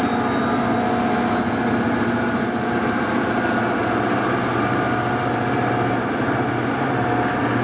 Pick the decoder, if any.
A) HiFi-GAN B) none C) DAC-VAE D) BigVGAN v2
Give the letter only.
B